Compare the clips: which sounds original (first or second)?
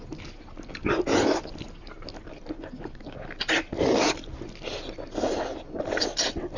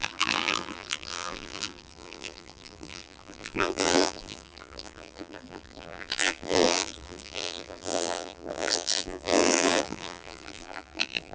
first